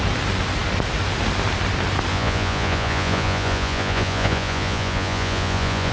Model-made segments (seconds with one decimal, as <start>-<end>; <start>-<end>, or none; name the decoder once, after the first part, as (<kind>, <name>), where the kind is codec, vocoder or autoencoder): 2.1-5.9 (vocoder, Vocos)